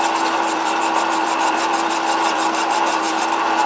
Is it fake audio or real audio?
fake